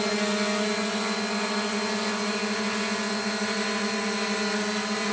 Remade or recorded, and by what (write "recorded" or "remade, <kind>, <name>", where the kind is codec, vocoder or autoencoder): recorded